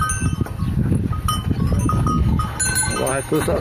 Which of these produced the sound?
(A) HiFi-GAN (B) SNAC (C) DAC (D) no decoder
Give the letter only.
D